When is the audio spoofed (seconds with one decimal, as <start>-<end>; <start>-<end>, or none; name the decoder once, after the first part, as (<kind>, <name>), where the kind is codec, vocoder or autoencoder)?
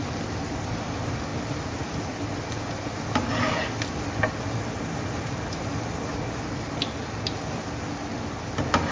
none